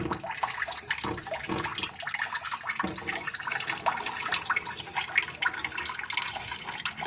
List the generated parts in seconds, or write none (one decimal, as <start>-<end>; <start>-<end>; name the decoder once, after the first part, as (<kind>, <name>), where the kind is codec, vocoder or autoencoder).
none